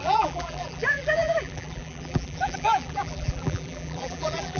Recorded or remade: remade